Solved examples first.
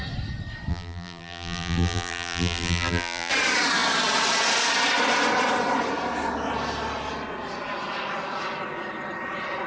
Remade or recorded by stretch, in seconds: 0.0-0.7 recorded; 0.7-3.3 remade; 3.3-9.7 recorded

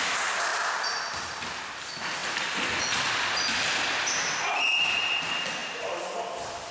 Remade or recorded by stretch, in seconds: 0.0-0.5 recorded; 0.5-1.6 remade; 1.6-5.6 recorded; 5.6-6.7 remade

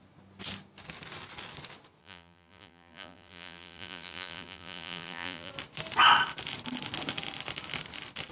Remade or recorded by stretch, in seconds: 0.0-2.0 recorded; 2.0-5.5 remade; 5.5-8.3 recorded

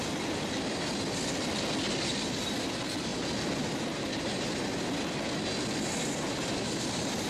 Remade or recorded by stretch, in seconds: 0.0-7.3 recorded

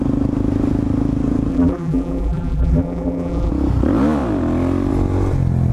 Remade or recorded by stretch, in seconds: 0.0-1.5 recorded; 1.5-3.5 remade; 3.5-5.7 recorded